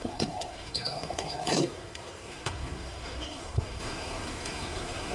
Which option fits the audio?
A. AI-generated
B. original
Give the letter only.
A